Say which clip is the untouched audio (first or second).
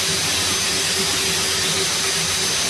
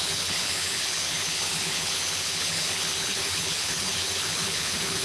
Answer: first